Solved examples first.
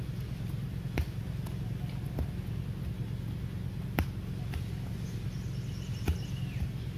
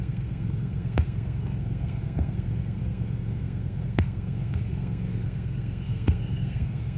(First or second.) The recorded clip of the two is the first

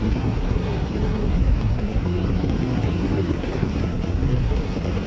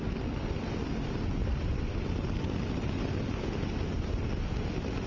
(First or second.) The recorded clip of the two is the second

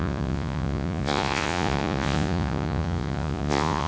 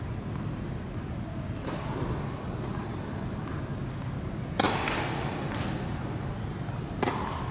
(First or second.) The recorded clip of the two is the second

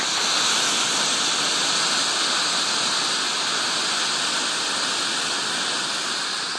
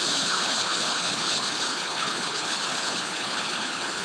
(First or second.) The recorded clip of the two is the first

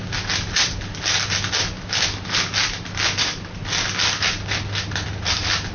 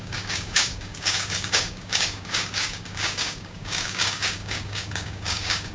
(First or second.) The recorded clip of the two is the first